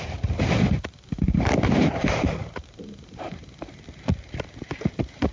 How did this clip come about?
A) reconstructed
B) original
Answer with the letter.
A